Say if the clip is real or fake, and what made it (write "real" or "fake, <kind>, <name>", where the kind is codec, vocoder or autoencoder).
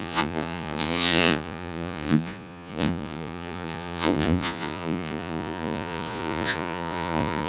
fake, vocoder, Vocos